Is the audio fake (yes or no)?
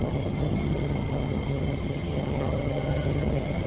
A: yes